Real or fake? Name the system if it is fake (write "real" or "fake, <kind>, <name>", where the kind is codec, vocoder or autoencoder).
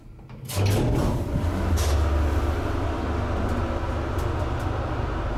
real